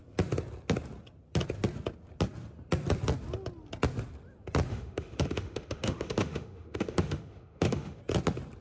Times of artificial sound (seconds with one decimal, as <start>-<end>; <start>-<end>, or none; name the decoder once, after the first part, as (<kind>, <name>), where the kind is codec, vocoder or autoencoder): 4.7-8.0 (autoencoder, DAC-VAE)